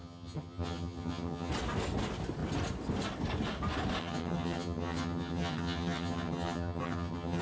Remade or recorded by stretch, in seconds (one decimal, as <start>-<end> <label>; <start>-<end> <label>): 0.0-1.5 remade; 1.5-4.0 recorded; 4.0-7.4 remade